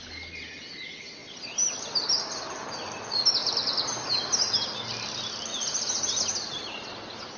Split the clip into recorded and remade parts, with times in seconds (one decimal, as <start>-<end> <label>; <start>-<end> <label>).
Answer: 0.0-1.2 recorded; 1.2-2.0 remade; 2.0-3.4 recorded; 3.4-4.2 remade; 4.2-5.5 recorded; 5.5-6.2 remade; 6.2-7.4 recorded